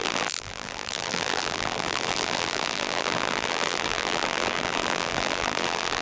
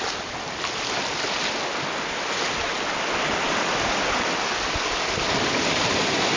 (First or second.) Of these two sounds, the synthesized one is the first